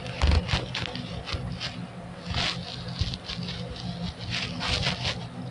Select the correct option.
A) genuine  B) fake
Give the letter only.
A